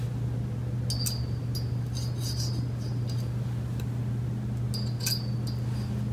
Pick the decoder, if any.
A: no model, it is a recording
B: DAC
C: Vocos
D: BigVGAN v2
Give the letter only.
A